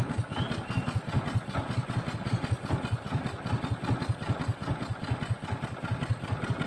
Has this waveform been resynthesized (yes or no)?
no